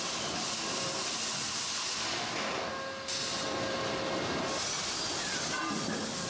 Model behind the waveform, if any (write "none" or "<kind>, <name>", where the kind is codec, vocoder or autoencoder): none